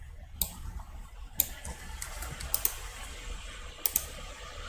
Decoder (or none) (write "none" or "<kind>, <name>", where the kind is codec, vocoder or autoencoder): none